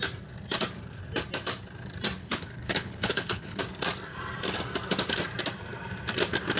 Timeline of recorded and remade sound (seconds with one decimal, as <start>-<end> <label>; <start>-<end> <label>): 0.0-2.2 recorded; 2.2-3.6 remade; 3.6-6.6 recorded